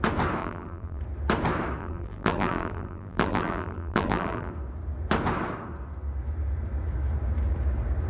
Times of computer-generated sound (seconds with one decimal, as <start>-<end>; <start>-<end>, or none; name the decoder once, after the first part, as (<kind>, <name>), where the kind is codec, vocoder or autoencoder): 0.4-1.0 (vocoder, BigVGAN v2); 1.8-4.5